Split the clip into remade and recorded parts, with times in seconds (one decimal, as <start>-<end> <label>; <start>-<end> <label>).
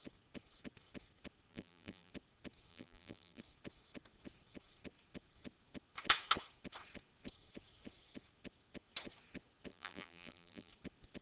0.0-1.5 recorded; 1.5-2.1 remade; 2.1-2.7 recorded; 2.7-3.4 remade; 3.4-9.7 recorded; 9.7-10.7 remade; 10.7-11.2 recorded